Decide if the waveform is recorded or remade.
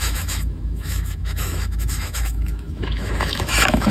remade